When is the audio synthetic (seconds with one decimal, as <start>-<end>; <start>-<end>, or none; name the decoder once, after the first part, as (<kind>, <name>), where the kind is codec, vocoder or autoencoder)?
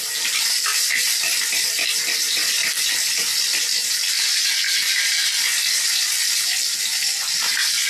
none